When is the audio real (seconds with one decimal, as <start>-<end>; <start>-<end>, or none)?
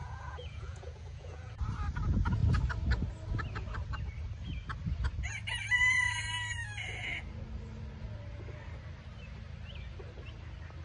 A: 1.6-10.8